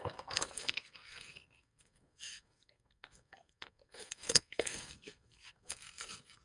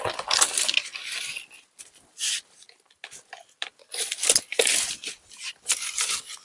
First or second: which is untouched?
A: second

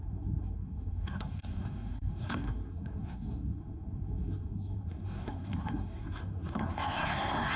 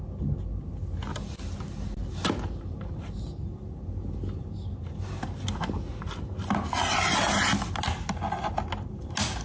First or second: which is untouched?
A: second